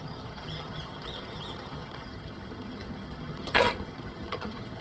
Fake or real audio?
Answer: fake